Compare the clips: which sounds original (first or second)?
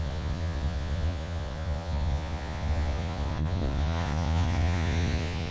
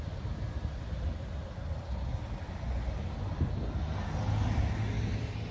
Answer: second